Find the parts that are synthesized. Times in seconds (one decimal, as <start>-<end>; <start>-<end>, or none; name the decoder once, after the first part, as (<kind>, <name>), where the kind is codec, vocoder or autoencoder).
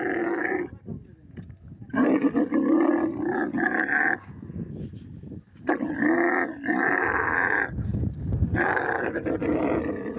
none